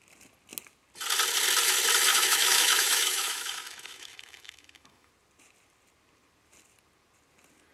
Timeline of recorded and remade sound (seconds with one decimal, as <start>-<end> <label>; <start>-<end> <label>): 0.0-2.1 recorded; 2.1-5.1 remade; 5.1-7.7 recorded